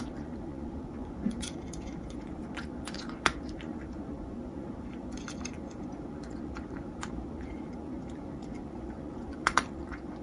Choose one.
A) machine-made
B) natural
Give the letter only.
A